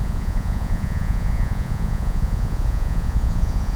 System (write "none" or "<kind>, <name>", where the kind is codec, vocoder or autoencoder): vocoder, Vocos